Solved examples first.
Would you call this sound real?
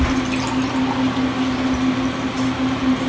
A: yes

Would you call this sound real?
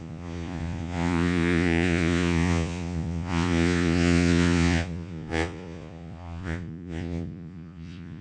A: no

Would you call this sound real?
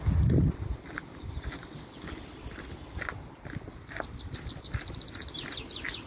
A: yes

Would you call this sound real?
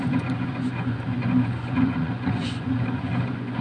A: no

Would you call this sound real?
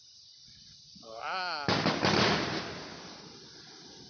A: yes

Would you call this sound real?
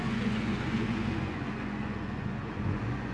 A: no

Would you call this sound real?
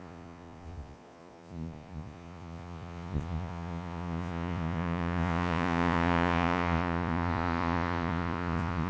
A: no